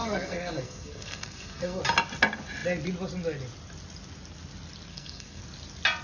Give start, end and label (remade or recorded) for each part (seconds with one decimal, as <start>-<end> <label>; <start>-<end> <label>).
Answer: 0.0-1.8 remade; 1.8-4.9 recorded; 4.9-5.4 remade; 5.4-6.0 recorded